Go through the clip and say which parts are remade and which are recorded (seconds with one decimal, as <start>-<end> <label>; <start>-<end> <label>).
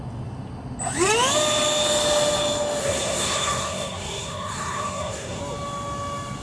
0.0-2.8 recorded; 2.8-5.4 remade; 5.4-6.4 recorded